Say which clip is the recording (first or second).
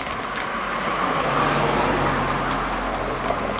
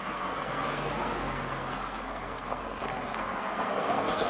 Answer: first